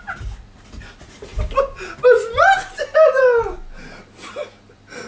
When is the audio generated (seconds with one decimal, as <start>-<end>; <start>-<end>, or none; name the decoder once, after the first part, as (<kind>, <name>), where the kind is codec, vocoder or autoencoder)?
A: none